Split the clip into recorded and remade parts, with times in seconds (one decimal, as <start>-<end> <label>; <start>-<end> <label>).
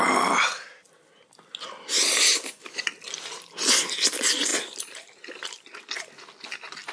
0.0-6.9 recorded